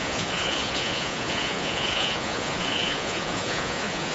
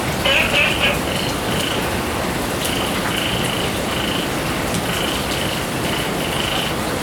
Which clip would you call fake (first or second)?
first